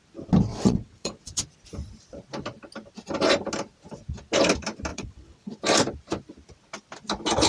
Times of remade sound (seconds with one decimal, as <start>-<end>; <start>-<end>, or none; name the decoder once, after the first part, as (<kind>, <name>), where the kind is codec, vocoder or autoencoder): 0.5-1.4 (vocoder, WaveNeXt); 4.9-5.6